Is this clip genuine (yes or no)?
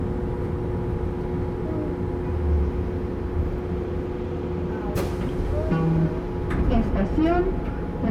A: yes